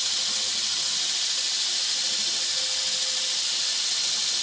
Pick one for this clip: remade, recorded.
recorded